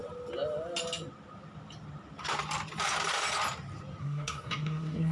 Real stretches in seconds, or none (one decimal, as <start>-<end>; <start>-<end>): 0.0-4.0